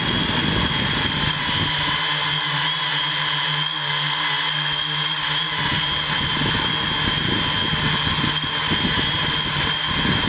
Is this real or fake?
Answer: real